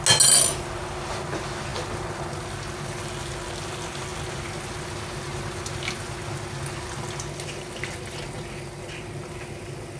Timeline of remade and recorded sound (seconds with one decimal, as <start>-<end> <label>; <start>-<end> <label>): 0.0-10.0 recorded